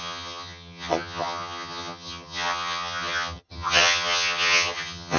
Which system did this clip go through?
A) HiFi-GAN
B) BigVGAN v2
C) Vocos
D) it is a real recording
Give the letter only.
A